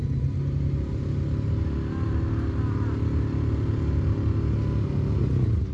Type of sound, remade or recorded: recorded